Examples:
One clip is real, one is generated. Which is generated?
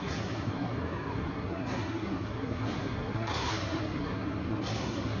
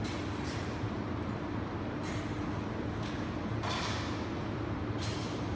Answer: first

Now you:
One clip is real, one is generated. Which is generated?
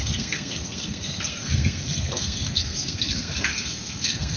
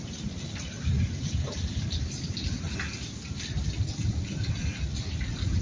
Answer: first